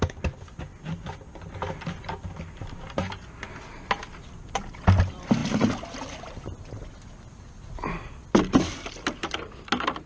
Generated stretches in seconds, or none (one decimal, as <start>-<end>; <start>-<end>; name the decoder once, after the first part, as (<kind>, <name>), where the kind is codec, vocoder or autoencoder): none